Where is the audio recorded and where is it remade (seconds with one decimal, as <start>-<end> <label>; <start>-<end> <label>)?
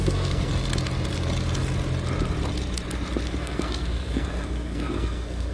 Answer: 0.0-0.5 remade; 0.5-3.4 recorded; 3.4-5.5 remade